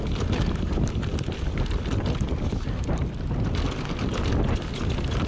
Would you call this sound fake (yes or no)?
no